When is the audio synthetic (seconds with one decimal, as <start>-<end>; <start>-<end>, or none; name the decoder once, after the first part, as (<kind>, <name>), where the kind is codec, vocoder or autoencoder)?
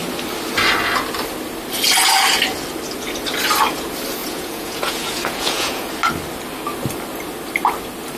4.2-5.9 (vocoder, Vocos)